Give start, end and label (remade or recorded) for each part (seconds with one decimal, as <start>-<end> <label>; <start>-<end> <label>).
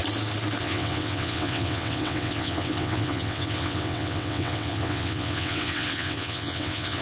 0.0-0.6 recorded; 0.6-7.0 remade